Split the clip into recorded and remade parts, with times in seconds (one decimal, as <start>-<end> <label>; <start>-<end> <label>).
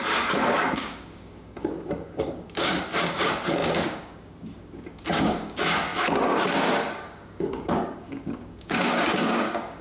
0.0-9.8 remade